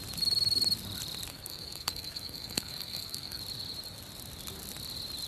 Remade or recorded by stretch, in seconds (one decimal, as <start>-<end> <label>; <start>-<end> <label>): 0.0-1.3 recorded; 1.3-3.4 remade; 3.4-5.3 recorded